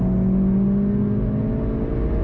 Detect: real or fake real